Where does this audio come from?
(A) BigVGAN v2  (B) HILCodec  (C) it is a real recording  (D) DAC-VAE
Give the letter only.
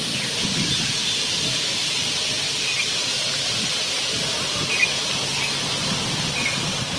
C